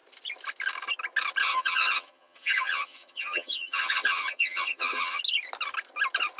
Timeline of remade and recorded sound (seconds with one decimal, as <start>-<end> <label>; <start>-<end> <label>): 0.0-1.4 recorded; 1.4-5.2 remade; 5.2-6.4 recorded